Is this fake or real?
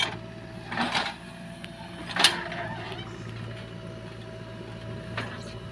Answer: real